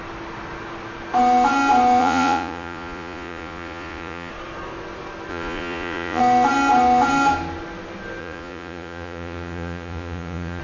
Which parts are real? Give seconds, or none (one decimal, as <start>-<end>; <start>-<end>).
0.0-2.0; 4.3-5.3; 6.2-8.2